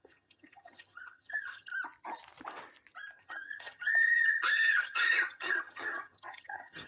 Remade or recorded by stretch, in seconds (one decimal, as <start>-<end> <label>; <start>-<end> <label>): 0.0-1.7 remade; 1.7-3.2 recorded; 3.2-6.9 remade